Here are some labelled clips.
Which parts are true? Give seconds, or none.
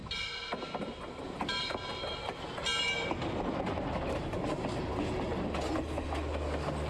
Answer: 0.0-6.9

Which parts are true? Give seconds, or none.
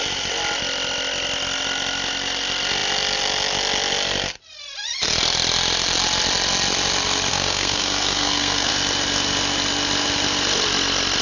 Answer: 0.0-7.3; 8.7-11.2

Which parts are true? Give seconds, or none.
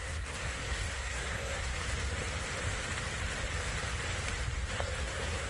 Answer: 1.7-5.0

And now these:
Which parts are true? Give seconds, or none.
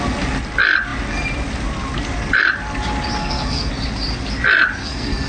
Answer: 0.0-3.2; 3.7-4.8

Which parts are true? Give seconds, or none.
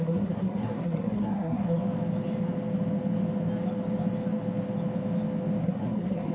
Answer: 1.8-5.6